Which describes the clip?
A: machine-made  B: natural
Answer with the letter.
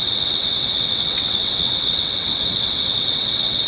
A